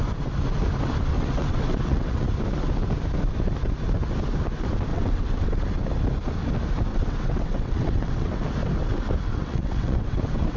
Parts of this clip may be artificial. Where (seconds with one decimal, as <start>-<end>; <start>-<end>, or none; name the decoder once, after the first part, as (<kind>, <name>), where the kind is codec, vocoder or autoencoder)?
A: 1.1-2.3 (vocoder, WaveNeXt); 4.9-5.6; 6.9-8.4; 9.4-10.6